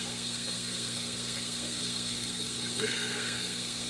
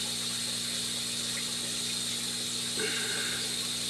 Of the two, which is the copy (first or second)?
first